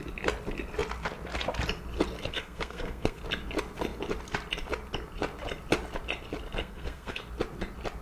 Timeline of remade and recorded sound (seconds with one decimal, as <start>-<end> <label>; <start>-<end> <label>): 0.0-2.3 recorded; 2.3-3.2 remade; 3.2-6.6 recorded; 6.6-7.2 remade; 7.2-8.0 recorded